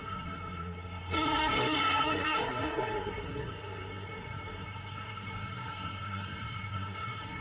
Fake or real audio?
fake